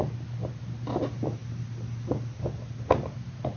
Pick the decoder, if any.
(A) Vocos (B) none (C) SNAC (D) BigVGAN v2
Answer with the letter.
B